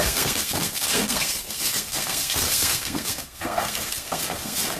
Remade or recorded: remade